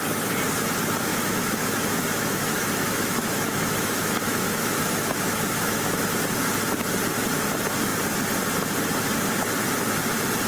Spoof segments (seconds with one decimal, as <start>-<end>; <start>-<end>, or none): 1.1-6.0